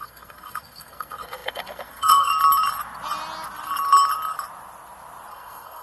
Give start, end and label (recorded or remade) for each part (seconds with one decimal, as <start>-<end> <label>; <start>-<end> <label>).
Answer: 0.0-2.3 remade; 2.3-5.3 recorded; 5.3-5.8 remade